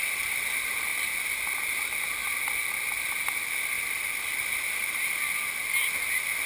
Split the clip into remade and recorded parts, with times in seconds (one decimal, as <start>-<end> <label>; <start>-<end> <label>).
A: 0.0-6.5 recorded